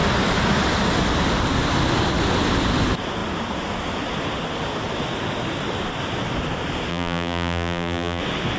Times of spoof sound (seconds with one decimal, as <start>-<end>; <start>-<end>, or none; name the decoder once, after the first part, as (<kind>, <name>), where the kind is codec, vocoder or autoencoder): 6.9-8.2 (vocoder, BigVGAN v2)